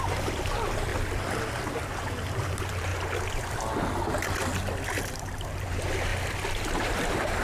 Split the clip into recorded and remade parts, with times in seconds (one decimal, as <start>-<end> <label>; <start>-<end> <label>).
0.0-0.9 remade; 0.9-1.7 recorded; 1.7-2.9 remade; 2.9-5.0 recorded; 5.0-6.1 remade; 6.1-6.7 recorded; 6.7-7.4 remade